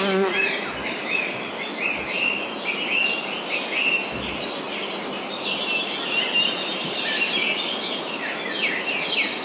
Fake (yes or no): no